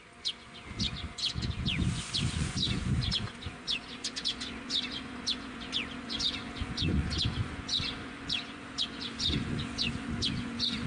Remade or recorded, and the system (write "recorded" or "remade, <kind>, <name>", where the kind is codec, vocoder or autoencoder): remade, vocoder, Vocos